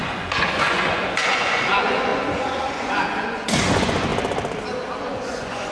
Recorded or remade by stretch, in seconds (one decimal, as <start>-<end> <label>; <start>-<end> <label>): 0.0-4.1 remade; 4.1-5.0 recorded; 5.0-5.7 remade